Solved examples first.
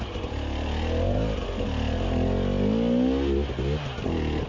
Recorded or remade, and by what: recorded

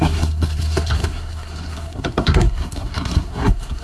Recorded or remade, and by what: remade, codec, SNAC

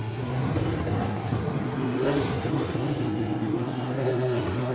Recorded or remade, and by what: remade, codec, SNAC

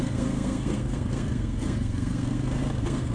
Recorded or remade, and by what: remade, codec, SNAC